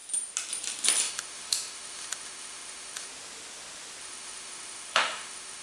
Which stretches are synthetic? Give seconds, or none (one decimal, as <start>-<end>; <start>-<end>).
1.0-3.1; 4.0-5.6